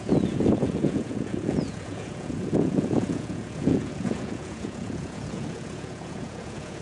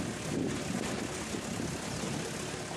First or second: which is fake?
first